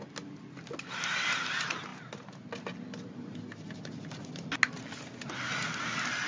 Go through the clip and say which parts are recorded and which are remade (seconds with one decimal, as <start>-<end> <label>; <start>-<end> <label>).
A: 0.0-6.3 recorded